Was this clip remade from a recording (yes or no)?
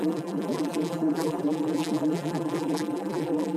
yes